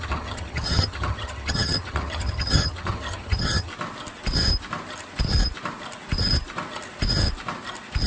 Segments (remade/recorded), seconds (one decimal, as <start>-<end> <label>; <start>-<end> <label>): 0.0-3.7 remade; 3.7-8.1 recorded